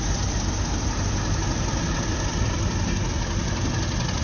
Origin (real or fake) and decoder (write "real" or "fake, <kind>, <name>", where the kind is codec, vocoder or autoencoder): real